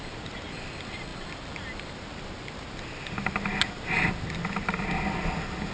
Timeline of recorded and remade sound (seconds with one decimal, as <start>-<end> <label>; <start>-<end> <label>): 0.0-5.7 recorded